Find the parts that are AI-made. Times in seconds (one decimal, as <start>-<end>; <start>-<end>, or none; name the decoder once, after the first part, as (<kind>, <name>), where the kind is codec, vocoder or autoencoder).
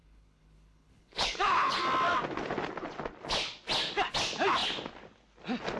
0.0-1.8 (codec, HILCodec)